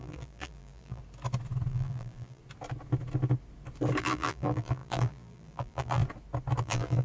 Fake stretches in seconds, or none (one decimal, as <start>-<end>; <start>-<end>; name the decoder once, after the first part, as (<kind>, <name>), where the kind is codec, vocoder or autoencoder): 0.0-1.0 (vocoder, BigVGAN v2); 1.7-2.4; 4.0-6.0; 6.6-7.0